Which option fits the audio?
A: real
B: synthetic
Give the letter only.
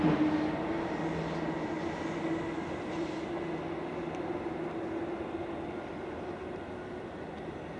A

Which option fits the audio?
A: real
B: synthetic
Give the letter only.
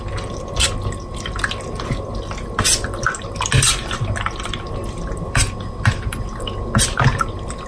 A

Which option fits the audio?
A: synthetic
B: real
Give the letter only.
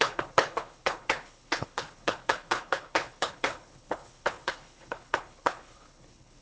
A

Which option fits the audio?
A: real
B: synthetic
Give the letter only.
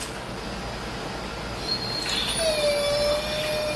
A